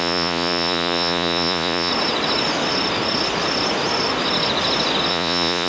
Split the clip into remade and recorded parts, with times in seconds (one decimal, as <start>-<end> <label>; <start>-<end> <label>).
0.0-1.9 remade; 1.9-5.1 recorded; 5.1-5.7 remade